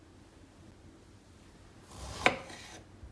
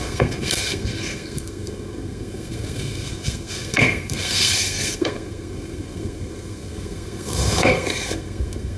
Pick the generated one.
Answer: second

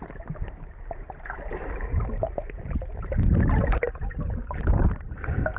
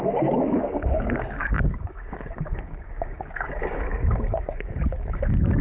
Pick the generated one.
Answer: second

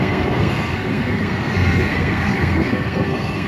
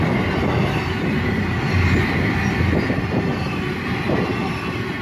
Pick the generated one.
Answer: first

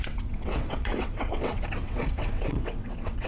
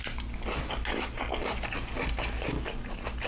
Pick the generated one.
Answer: first